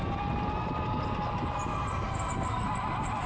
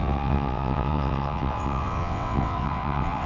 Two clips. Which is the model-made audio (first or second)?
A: second